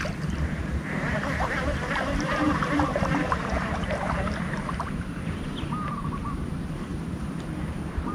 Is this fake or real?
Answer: fake